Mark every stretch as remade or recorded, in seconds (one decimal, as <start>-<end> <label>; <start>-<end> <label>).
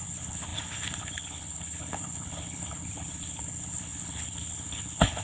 0.0-5.2 remade